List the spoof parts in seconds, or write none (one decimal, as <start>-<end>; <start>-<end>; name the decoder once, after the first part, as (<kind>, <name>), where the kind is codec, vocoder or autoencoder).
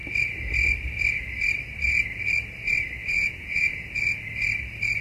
3.0-4.0 (vocoder, Vocos)